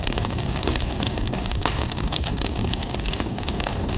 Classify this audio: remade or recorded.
remade